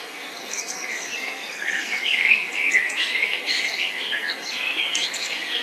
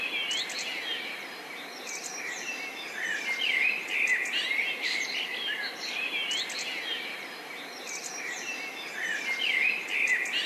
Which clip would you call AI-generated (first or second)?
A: first